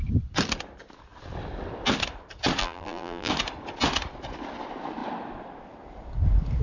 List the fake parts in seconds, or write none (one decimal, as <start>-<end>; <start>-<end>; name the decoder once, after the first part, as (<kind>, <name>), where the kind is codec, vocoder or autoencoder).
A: 2.6-3.3 (vocoder, BigVGAN v2)